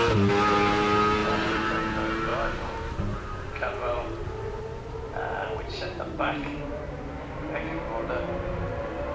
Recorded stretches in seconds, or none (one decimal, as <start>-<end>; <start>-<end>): 0.0-1.2; 1.7-2.3; 7.5-9.1